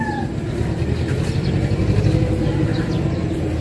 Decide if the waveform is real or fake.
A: real